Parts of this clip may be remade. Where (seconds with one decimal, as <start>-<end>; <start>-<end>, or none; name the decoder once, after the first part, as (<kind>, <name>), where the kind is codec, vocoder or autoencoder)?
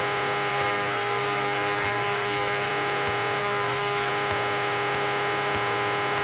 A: 0.5-2.7 (codec, SNAC); 3.4-4.1